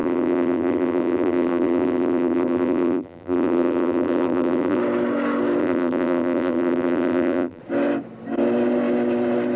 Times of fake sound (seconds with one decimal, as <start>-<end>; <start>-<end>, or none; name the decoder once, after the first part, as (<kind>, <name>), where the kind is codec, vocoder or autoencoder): 0.0-4.8 (vocoder, BigVGAN v2); 5.6-7.6